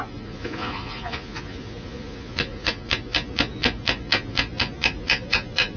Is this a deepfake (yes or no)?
yes